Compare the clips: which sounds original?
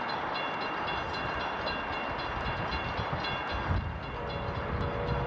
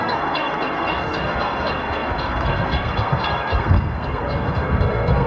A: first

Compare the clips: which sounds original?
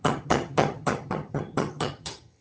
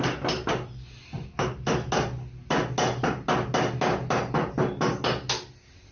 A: second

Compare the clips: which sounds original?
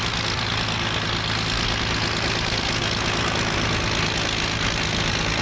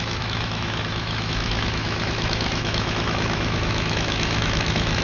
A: first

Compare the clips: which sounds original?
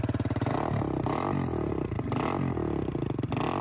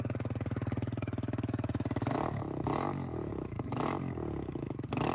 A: first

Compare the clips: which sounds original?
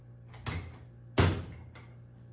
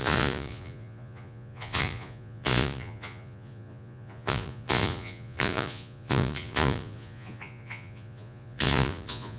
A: first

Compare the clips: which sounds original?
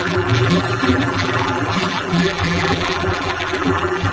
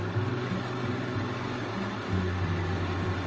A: second